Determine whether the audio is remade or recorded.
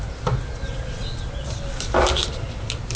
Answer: recorded